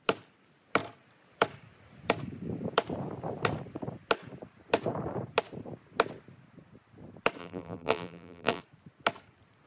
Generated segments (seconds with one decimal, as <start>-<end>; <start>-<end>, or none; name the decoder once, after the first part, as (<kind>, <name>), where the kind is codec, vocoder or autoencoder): 7.4-8.6 (vocoder, BigVGAN v2)